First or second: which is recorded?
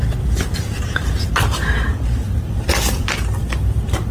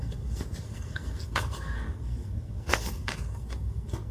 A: first